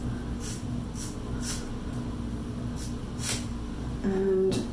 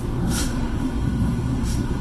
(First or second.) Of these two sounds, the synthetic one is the second